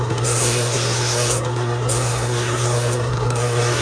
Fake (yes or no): yes